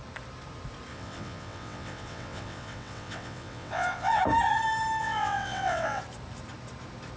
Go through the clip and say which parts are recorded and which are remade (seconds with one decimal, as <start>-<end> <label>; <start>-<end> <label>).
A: 0.0-0.9 recorded; 0.9-4.2 remade; 4.2-5.0 recorded; 5.0-6.0 remade; 6.0-7.2 recorded

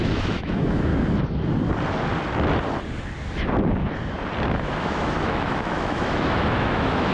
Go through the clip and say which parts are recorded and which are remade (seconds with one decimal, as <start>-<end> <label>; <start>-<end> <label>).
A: 0.0-0.9 remade; 0.9-4.5 recorded; 4.5-7.1 remade

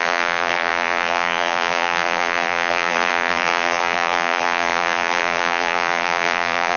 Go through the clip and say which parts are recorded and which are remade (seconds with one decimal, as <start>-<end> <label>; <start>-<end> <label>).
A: 0.0-6.8 remade